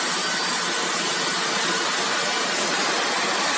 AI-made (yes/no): no